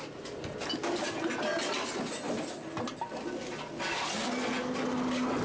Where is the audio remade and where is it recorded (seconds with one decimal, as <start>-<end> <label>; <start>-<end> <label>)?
0.0-5.4 recorded